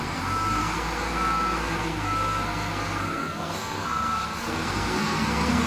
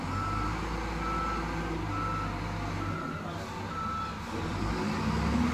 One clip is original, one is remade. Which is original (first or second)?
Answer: second